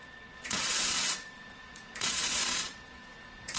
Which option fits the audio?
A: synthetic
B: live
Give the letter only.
A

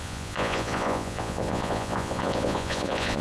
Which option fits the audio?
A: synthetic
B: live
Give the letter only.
A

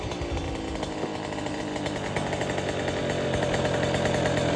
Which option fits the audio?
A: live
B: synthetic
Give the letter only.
A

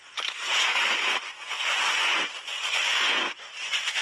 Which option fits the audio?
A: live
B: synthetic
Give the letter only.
B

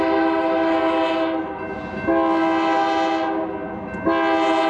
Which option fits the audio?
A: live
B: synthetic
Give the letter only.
A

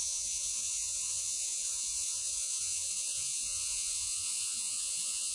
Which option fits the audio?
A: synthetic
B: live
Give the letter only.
A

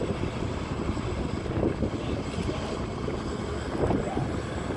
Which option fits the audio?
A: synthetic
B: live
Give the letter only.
B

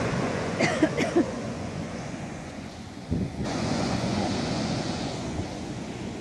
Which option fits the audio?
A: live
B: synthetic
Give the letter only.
B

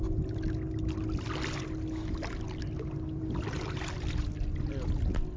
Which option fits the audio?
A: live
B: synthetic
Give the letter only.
A